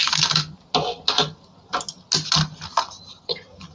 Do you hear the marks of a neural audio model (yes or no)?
no